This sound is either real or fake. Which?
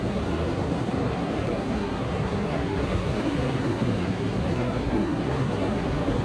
fake